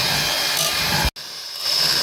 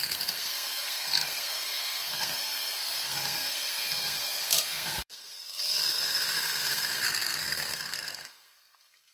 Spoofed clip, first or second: second